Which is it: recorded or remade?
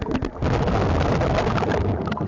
recorded